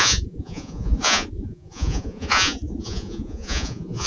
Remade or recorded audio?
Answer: remade